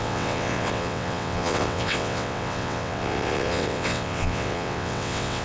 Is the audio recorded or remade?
remade